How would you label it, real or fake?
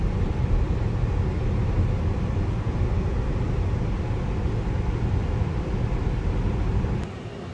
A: real